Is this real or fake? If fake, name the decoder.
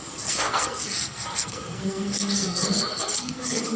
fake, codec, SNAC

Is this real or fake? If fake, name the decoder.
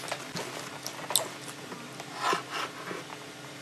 real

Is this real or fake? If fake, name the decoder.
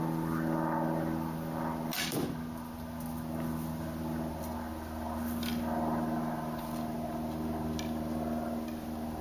real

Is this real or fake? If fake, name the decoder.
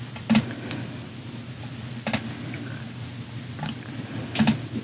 real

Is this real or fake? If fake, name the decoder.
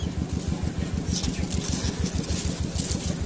real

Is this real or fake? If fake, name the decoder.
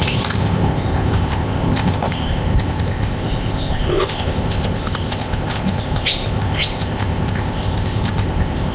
fake, codec, ZipCodec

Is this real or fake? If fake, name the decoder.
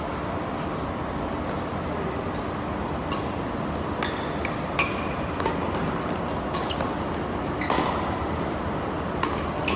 real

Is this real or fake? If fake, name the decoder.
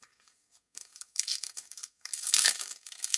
fake, codec, SNAC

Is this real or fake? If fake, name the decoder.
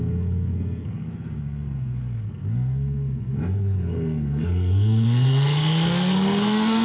fake, codec, SNAC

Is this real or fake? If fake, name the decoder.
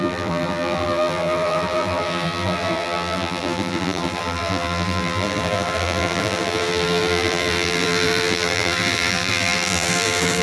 fake, vocoder, BigVGAN v2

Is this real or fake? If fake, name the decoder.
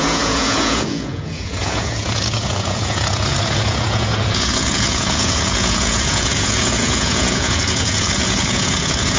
fake, vocoder, Vocos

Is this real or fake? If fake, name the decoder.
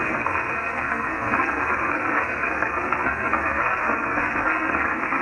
fake, codec, SNAC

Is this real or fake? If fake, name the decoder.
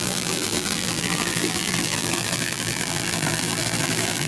fake, vocoder, BigVGAN v2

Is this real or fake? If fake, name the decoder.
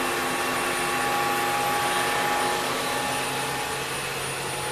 real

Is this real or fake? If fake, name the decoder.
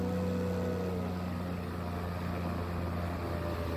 real